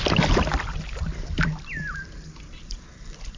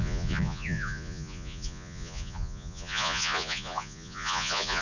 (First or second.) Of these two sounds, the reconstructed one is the second